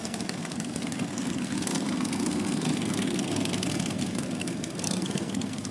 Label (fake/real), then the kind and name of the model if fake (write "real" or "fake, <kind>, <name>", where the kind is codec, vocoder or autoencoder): fake, codec, SNAC